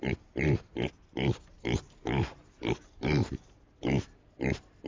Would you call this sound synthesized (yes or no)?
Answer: no